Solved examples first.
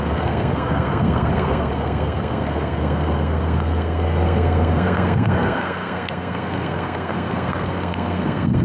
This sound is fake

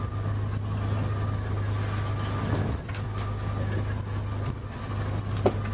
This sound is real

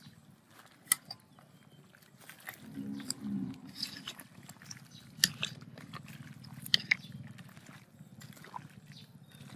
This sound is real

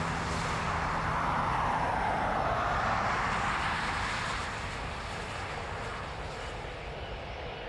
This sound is real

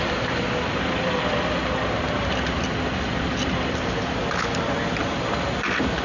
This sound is real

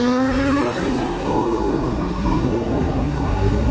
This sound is fake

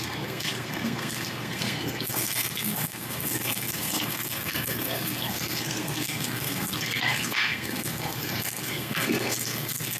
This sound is fake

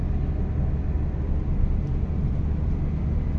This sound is real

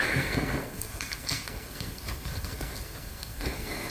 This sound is fake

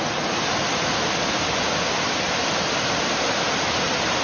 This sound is real